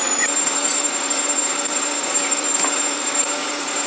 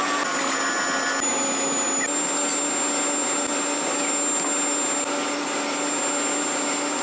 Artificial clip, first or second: first